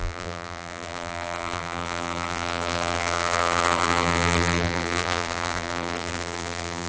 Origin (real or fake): fake